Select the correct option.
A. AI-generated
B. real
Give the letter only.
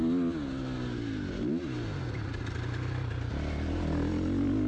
B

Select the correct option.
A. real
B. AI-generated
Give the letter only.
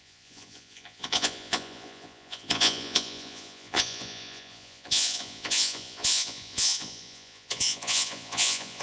B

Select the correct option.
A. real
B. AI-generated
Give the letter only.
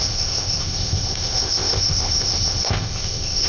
B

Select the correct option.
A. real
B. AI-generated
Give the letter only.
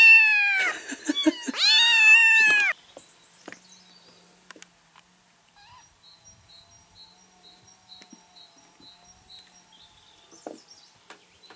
A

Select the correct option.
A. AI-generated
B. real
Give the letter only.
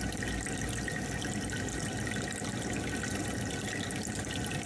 B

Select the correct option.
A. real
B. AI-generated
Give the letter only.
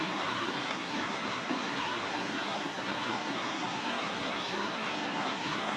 B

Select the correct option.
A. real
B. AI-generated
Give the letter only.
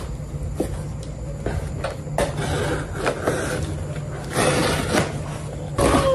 A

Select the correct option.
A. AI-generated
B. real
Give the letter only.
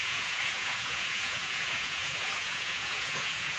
A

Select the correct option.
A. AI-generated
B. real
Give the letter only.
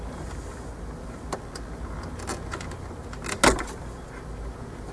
B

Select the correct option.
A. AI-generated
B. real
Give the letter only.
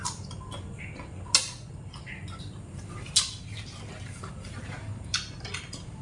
B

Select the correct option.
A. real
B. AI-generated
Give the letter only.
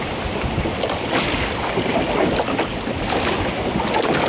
A